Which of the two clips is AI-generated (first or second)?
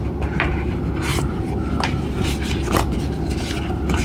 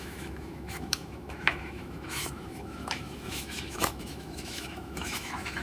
second